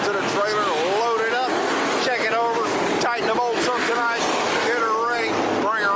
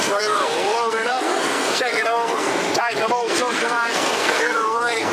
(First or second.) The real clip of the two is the first